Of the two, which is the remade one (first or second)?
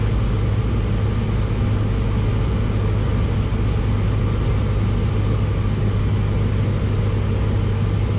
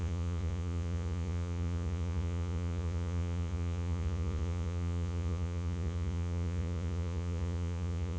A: second